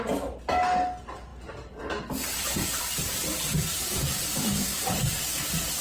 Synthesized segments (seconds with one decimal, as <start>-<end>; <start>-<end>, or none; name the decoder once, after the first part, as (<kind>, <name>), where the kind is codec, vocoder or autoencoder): 1.3-4.8 (vocoder, BigVGAN v2)